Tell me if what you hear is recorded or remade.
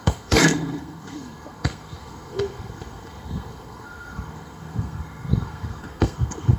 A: remade